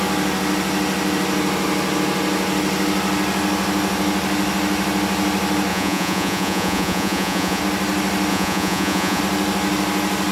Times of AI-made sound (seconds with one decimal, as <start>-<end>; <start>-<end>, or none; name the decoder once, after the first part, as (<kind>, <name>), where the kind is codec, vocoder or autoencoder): 5.7-7.6 (vocoder, Vocos); 8.3-9.2

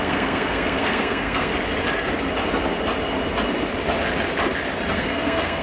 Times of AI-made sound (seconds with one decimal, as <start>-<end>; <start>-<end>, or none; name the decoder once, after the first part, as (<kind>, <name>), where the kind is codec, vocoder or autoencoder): 0.0-1.5 (codec, SNAC); 4.9-5.6

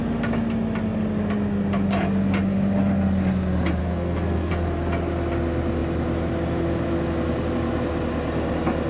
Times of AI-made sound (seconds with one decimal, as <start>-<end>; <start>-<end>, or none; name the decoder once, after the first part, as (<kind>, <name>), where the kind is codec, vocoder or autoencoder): 3.8-4.5 (codec, SNAC)

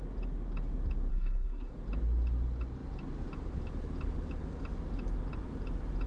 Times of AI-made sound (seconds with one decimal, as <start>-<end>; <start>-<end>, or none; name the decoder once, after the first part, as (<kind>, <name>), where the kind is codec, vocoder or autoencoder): 1.1-1.7 (codec, SNAC)

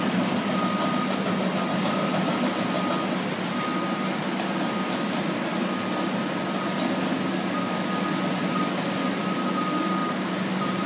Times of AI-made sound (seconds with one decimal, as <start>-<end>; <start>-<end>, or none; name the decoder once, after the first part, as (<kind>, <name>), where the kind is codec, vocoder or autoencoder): 10.0-10.9 (vocoder, BigVGAN v2)

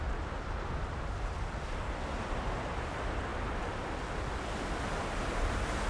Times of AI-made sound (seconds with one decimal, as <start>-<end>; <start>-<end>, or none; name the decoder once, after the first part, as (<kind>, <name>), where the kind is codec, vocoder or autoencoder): none

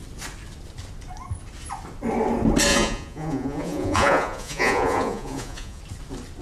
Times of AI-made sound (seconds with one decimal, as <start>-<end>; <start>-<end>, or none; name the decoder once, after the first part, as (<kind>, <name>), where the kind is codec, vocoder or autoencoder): 2.7-5.8 (vocoder, Vocos)